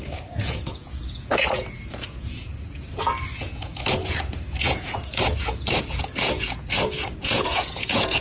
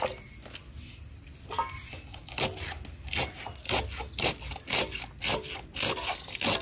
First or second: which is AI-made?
first